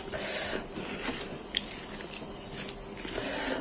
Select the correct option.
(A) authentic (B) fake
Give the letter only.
A